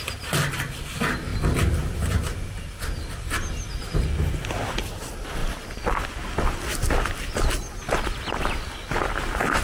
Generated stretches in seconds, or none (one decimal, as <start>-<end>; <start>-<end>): 1.3-1.9; 3.8-4.4